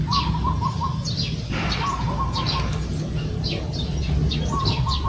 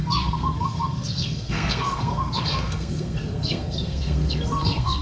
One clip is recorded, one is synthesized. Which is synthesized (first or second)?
second